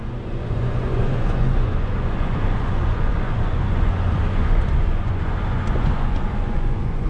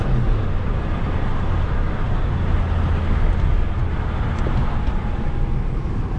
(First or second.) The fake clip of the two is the first